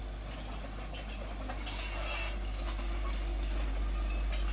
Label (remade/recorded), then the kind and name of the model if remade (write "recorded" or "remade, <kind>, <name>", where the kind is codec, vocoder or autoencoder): recorded